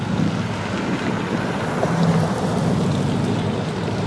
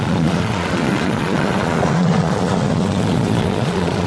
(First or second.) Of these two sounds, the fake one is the second